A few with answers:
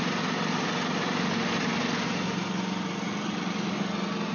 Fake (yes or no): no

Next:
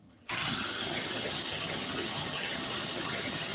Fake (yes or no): yes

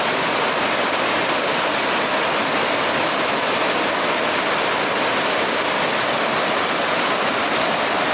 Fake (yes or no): no